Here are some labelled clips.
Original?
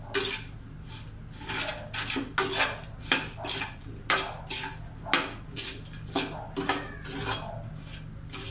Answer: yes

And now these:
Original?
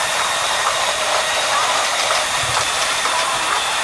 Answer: no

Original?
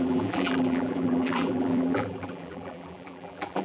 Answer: no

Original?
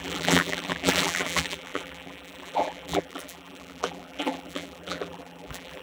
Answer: no